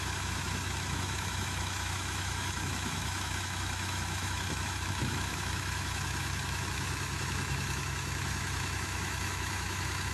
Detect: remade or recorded remade